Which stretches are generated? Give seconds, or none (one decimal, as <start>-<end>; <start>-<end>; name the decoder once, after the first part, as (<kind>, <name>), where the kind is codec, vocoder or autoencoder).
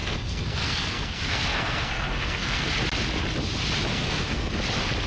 0.0-2.7 (codec, SNAC); 3.9-4.5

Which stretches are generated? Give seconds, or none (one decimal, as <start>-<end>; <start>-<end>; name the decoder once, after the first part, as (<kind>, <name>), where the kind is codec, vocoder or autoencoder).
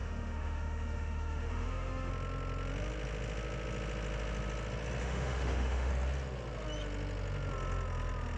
0.0-2.1 (autoencoder, DAC-VAE); 5.0-5.9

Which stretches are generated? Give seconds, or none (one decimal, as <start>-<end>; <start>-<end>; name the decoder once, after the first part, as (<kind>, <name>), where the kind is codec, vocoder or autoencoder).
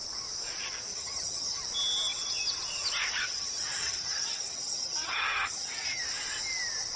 0.9-1.6 (vocoder, HiFi-GAN); 3.2-6.0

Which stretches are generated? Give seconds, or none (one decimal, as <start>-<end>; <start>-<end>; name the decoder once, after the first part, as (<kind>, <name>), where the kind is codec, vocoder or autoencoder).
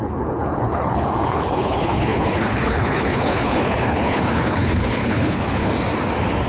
0.0-5.7 (codec, HILCodec)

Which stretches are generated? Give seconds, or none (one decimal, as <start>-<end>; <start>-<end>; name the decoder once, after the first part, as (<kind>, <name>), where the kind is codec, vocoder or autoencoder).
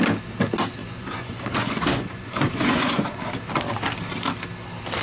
0.8-3.2 (vocoder, Vocos)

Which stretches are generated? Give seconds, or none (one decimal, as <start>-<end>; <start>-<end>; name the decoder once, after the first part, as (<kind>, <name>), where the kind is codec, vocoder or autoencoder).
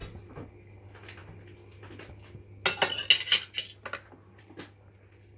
none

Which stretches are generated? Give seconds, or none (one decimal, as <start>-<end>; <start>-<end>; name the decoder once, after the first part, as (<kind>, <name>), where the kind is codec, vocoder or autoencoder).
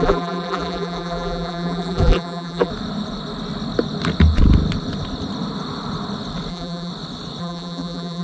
0.0-2.7 (vocoder, BigVGAN v2); 6.5-6.9; 7.4-8.2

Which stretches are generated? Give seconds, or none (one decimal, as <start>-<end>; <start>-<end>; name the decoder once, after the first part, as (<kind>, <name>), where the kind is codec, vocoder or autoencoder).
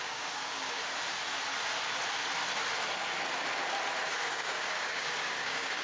0.0-0.8 (codec, DAC); 4.3-5.8